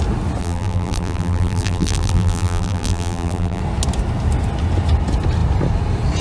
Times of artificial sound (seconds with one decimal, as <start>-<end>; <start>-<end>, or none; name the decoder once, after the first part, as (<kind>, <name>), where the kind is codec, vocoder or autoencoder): 0.4-3.6 (vocoder, BigVGAN v2)